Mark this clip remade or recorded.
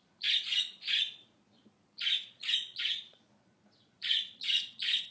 remade